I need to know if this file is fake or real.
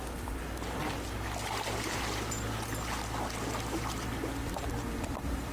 real